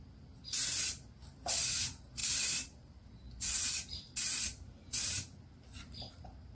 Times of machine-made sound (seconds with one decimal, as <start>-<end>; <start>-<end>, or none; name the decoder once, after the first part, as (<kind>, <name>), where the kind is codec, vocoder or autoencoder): 2.2-6.1 (vocoder, BigVGAN v2)